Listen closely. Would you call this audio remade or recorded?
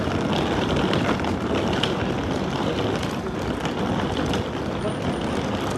recorded